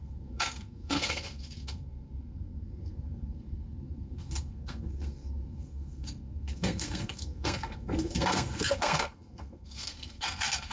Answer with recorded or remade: remade